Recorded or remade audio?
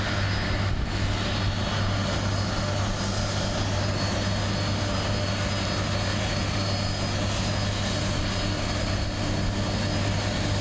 recorded